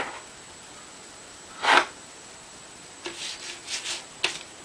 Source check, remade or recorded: recorded